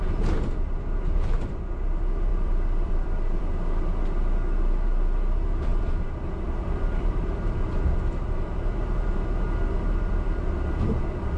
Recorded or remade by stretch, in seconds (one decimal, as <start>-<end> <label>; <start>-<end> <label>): 0.0-2.3 recorded; 2.3-3.4 remade; 3.4-5.7 recorded; 5.7-7.8 remade; 7.8-11.4 recorded